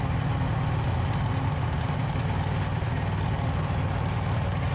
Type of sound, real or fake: real